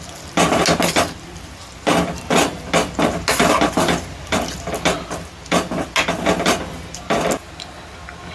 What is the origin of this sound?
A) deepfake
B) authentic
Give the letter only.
B